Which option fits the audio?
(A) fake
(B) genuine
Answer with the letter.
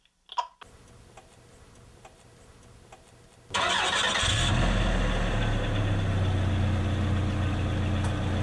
B